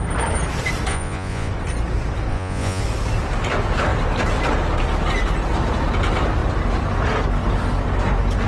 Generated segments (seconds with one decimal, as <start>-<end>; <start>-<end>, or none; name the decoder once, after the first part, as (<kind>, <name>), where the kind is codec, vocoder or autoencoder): 0.9-1.5 (vocoder, Vocos); 2.3-2.8